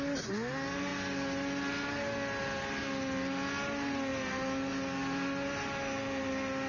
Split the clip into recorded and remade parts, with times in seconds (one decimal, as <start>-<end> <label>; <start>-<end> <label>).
0.0-6.7 recorded